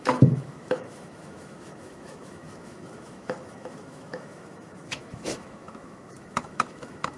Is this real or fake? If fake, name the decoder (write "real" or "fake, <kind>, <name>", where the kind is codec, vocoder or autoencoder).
fake, autoencoder, DAC-VAE